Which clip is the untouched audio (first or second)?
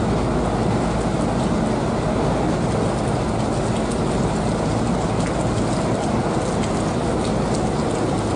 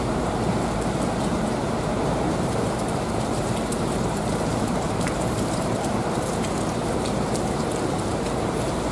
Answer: first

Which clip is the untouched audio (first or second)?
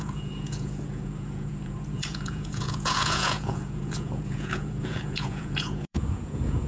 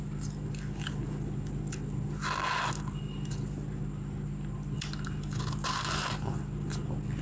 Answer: second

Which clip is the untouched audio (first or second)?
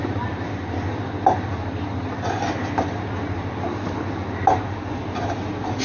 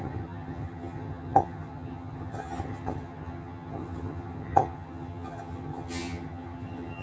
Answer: first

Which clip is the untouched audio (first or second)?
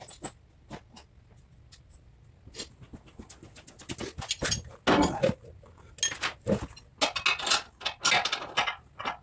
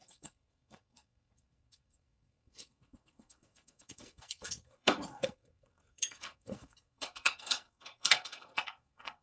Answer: first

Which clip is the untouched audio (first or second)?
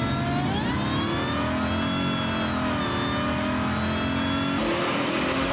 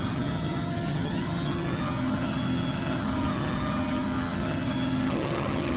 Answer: first